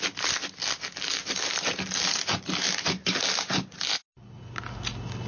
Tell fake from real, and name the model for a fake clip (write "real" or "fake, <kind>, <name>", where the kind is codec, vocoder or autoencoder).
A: real